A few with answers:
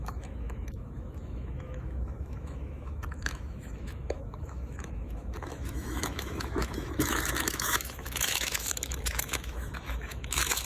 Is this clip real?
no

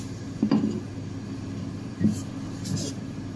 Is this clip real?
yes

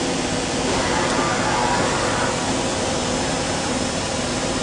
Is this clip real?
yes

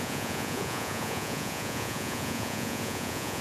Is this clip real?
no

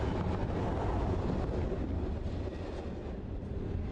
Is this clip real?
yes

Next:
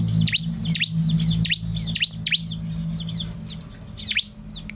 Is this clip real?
yes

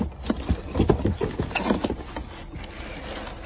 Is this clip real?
yes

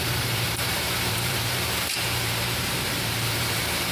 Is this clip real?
no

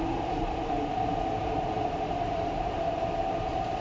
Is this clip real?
yes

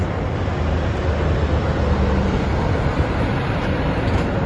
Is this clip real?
yes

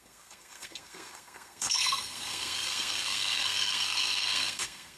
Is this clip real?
no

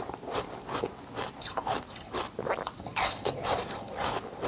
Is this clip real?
yes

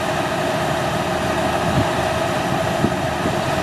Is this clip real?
yes